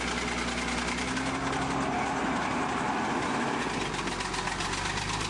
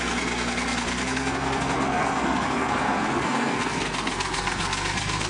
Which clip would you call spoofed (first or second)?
second